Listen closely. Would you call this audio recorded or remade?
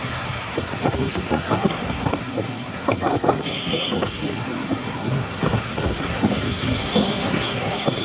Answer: remade